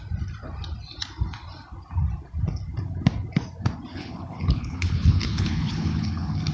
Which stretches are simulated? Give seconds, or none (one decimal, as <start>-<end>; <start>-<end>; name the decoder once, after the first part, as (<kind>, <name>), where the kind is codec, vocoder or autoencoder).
3.9-6.5 (codec, HILCodec)